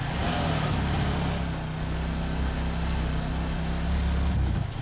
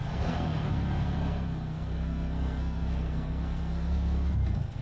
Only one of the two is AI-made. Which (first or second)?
second